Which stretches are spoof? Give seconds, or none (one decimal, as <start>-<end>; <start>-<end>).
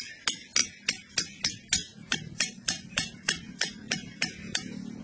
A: 1.9-5.0